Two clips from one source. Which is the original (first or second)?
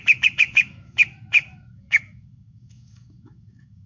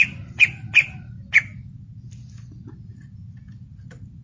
second